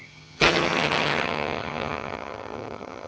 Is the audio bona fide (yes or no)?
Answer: no